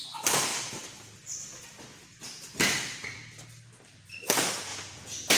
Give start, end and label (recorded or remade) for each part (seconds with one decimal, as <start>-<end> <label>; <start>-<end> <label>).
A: 0.0-4.7 recorded; 4.7-5.4 remade